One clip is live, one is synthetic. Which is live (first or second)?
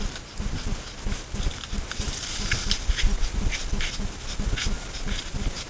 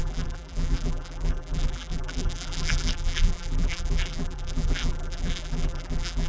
first